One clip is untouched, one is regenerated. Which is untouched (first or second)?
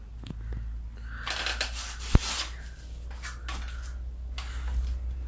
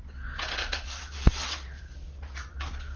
first